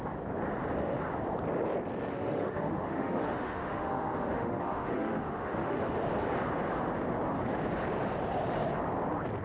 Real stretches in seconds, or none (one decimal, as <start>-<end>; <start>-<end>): 0.0-2.1; 5.8-9.4

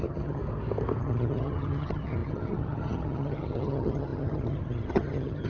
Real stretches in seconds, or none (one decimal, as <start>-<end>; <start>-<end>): 0.4-1.0